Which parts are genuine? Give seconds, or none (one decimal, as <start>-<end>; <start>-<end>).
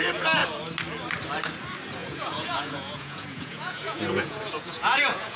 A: 0.0-2.0